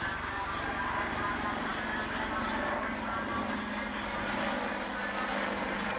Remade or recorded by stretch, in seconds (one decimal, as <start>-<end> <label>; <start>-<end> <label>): 0.0-6.0 recorded

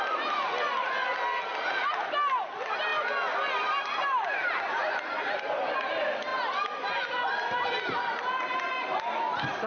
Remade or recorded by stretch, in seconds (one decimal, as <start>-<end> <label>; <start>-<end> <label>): 0.0-9.7 recorded

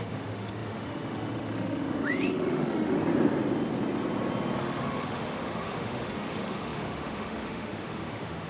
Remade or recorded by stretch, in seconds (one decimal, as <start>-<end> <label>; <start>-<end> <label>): 0.0-3.0 remade; 3.0-4.6 recorded; 4.6-8.5 remade